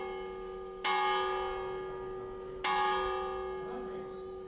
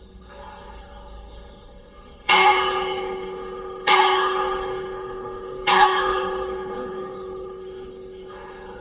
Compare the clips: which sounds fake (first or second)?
second